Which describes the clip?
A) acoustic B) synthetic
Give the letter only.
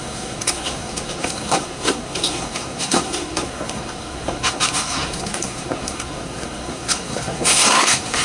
B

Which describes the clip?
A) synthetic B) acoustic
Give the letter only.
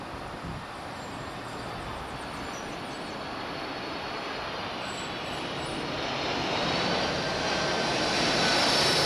B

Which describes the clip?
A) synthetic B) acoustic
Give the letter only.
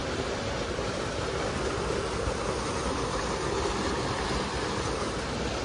B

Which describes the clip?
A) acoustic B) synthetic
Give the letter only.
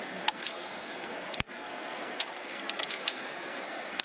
B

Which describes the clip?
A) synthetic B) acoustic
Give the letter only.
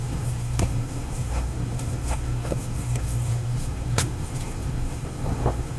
A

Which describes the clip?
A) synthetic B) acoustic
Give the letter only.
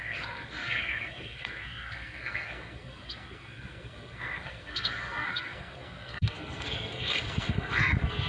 A